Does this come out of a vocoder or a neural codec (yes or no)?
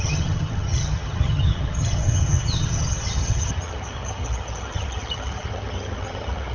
yes